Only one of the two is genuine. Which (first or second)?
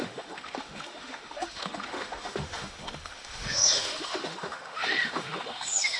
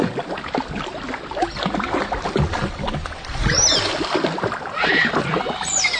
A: second